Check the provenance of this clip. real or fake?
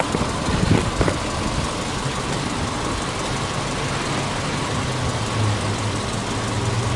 real